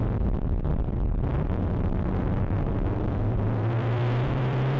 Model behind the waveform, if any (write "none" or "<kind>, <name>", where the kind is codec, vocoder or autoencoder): vocoder, BigVGAN v2